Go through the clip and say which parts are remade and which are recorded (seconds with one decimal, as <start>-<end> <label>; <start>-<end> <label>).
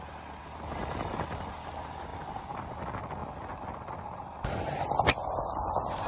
0.0-6.1 recorded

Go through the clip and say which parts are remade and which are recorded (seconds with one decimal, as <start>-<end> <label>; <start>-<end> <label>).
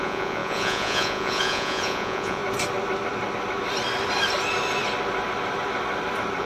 0.0-2.4 remade; 2.4-6.4 recorded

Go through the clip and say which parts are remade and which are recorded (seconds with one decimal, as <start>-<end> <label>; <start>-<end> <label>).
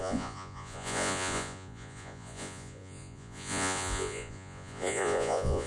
0.0-5.7 remade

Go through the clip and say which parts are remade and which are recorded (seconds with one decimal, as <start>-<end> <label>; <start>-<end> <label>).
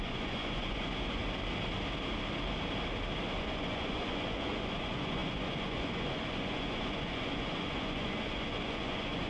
0.0-1.2 remade; 1.2-3.4 recorded; 3.4-9.3 remade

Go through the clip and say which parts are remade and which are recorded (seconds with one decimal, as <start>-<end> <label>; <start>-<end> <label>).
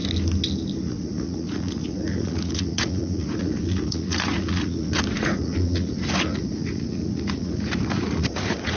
0.0-0.8 recorded; 0.8-8.8 remade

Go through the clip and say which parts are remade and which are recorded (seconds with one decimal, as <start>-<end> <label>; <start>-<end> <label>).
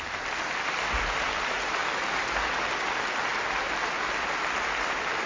0.0-5.3 recorded